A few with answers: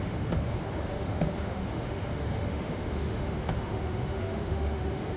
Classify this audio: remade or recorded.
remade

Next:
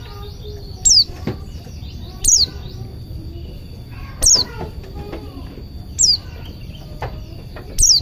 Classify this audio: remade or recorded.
recorded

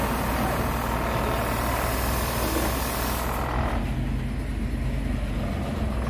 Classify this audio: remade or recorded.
recorded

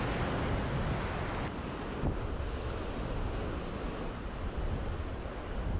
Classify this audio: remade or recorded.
recorded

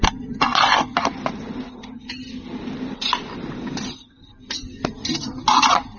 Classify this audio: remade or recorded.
recorded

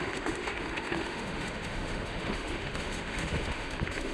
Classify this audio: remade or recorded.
remade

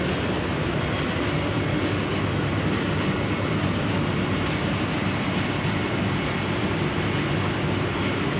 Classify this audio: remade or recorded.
recorded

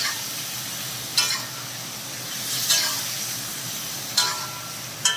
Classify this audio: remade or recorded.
recorded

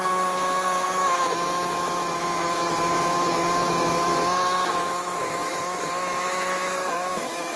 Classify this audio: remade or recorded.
remade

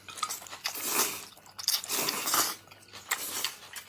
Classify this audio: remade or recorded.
recorded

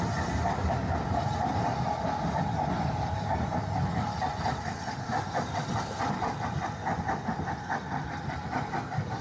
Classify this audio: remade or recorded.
recorded